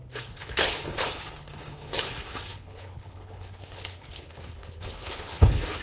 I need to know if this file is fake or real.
fake